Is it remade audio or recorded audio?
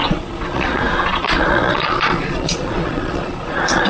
remade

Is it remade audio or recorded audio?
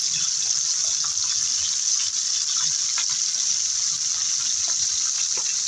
recorded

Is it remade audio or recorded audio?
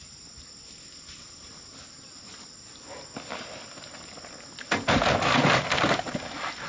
recorded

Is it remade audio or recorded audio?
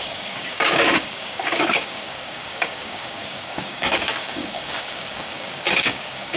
remade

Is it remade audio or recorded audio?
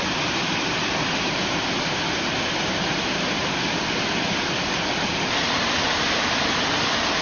recorded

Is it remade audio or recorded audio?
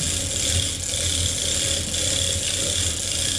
recorded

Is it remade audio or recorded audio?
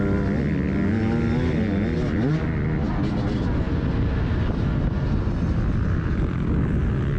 recorded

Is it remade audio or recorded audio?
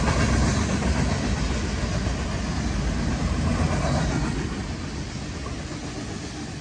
recorded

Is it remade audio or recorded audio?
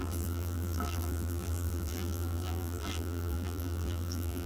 remade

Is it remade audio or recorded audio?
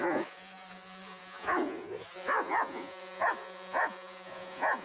remade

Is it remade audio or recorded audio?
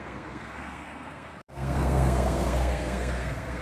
remade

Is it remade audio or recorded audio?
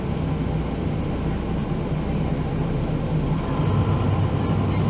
recorded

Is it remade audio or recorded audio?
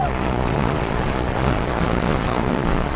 remade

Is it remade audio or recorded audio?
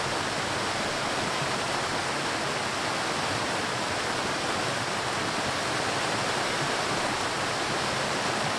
recorded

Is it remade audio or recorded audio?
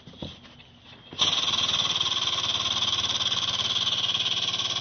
recorded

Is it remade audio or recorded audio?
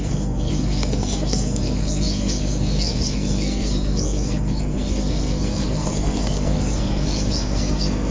remade